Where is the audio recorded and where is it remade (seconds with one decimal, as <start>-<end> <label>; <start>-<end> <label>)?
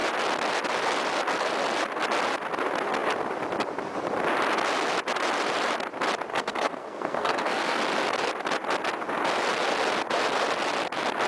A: 0.0-6.3 recorded; 6.3-7.8 remade; 7.8-11.3 recorded